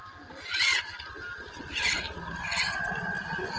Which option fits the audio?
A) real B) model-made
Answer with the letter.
A